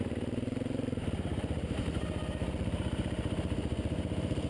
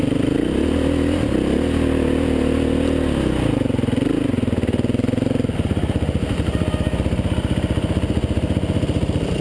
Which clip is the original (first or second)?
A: second